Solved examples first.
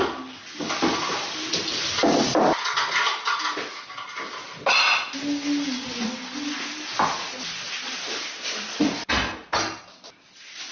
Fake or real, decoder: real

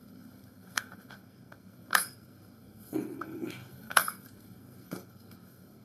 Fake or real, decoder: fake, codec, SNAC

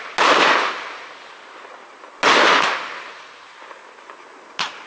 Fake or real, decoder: real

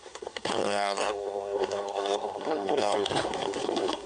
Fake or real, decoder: fake, codec, SNAC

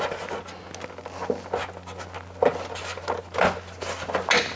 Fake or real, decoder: real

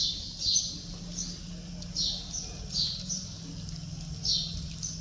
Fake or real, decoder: real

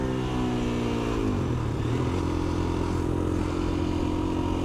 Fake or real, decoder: real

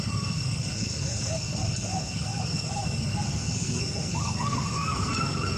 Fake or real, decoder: fake, codec, SNAC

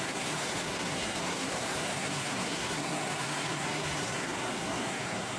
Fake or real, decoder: fake, codec, SNAC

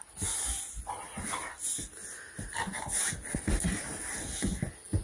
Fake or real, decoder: real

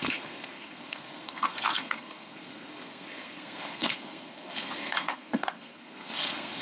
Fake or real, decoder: fake, codec, SNAC